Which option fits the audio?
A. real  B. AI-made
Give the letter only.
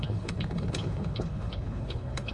B